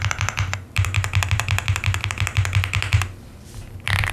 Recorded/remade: remade